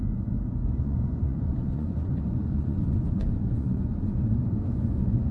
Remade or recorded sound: remade